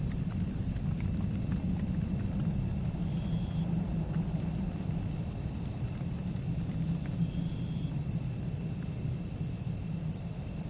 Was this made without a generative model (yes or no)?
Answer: no